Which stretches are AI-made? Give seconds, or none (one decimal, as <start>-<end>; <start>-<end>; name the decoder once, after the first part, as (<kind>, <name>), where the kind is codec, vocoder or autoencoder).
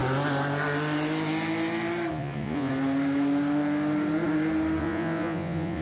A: 2.1-2.7 (vocoder, Vocos); 4.8-5.8